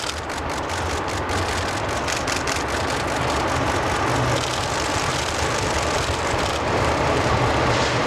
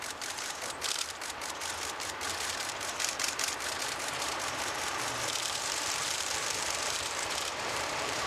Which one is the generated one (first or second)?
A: second